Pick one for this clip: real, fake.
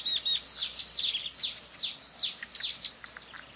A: real